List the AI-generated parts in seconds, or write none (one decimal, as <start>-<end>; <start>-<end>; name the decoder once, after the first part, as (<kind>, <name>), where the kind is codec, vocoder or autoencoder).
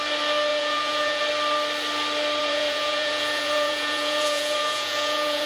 0.5-1.2 (vocoder, Vocos); 2.4-5.5